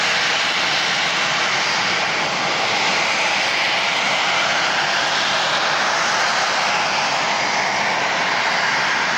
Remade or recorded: recorded